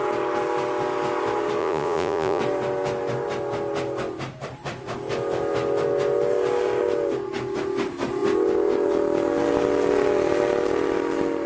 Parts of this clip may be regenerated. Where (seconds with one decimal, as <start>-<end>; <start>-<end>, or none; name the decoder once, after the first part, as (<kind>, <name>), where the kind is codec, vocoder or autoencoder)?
1.6-2.4 (vocoder, Vocos)